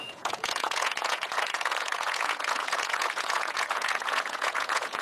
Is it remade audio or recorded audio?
remade